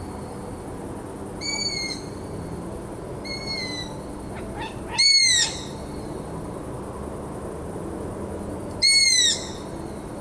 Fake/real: real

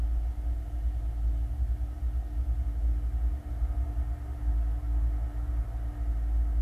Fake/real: real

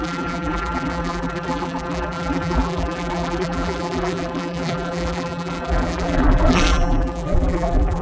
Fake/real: fake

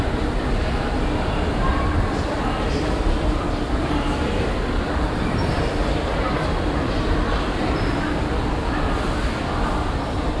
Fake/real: fake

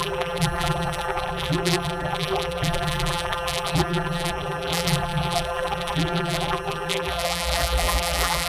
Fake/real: fake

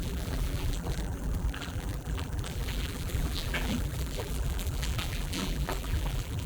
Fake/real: fake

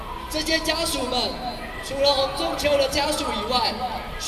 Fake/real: real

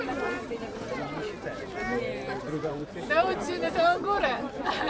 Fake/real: fake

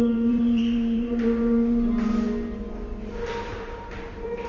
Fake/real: fake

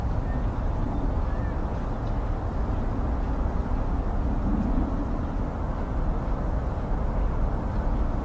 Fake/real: real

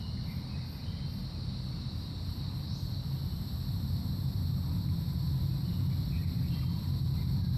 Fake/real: real